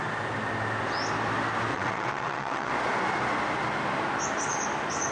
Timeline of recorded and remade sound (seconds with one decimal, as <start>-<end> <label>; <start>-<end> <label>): 0.0-1.7 recorded; 1.7-2.7 remade; 2.7-5.1 recorded